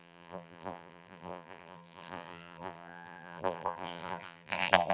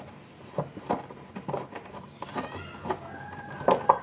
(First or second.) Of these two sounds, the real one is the second